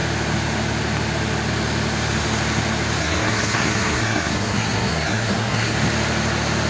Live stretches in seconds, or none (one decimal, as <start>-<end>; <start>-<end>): 0.0-3.0; 5.7-6.7